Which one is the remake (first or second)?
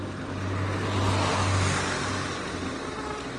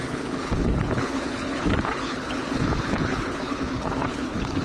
second